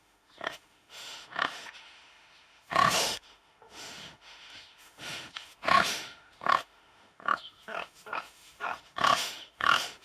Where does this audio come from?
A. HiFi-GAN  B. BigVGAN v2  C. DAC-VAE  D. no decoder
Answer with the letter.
C